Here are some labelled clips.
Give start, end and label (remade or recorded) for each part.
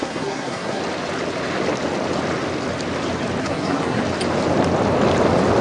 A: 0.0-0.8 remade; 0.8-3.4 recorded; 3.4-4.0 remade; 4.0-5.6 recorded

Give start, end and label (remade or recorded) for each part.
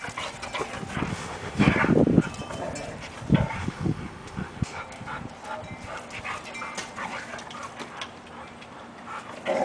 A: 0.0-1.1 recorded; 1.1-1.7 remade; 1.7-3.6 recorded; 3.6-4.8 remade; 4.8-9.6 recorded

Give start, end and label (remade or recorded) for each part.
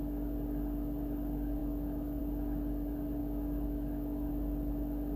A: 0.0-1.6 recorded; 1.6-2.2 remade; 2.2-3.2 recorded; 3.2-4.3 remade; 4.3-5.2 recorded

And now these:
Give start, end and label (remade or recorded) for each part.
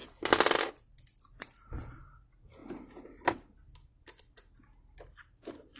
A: 0.0-5.8 recorded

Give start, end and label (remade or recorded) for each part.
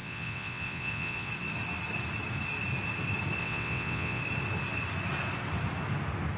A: 0.0-1.3 remade; 1.3-3.4 recorded; 3.4-4.2 remade; 4.2-6.4 recorded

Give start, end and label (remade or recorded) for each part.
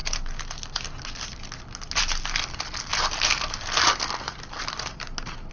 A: 0.0-5.5 recorded